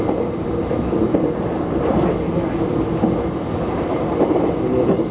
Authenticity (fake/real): real